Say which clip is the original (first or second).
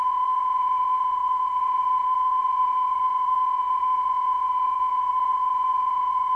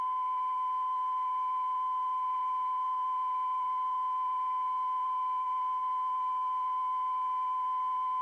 second